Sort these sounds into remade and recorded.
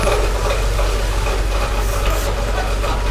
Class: recorded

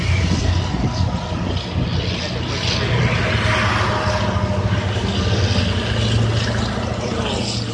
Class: recorded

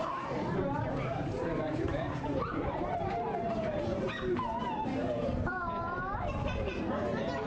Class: remade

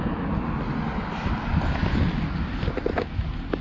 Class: recorded